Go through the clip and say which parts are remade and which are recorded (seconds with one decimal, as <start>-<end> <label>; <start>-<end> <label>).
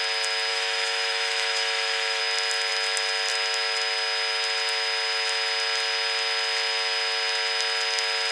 0.0-0.5 recorded; 0.5-2.2 remade; 2.2-8.3 recorded